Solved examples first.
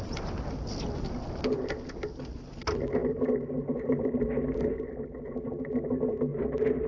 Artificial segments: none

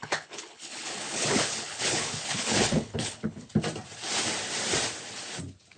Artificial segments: 0.0-3.5 (codec, HILCodec)